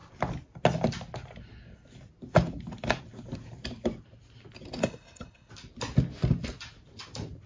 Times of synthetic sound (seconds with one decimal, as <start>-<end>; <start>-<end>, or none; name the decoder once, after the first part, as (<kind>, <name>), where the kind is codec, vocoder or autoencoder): 4.8-5.5 (codec, HILCodec)